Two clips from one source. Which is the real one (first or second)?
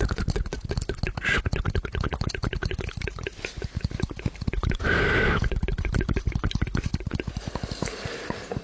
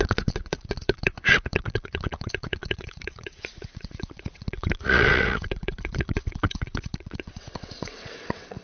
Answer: first